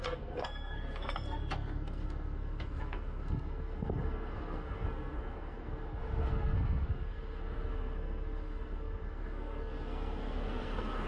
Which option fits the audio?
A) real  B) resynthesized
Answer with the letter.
B